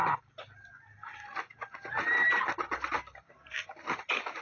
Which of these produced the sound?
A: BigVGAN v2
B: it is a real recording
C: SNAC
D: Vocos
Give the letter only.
B